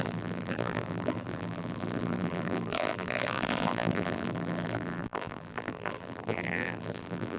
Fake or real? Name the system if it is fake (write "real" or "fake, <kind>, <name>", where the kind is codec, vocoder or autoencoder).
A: fake, vocoder, BigVGAN v2